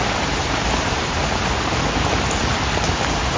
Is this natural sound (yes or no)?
no